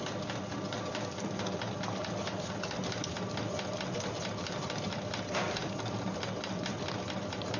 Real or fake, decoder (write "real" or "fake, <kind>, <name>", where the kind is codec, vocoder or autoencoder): real